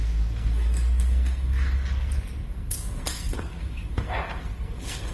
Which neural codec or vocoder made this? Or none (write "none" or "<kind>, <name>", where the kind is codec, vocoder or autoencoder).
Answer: codec, SNAC